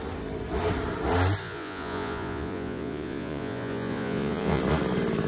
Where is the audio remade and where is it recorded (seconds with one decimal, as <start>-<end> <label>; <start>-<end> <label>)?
0.0-1.4 recorded; 1.4-4.6 remade; 4.6-5.3 recorded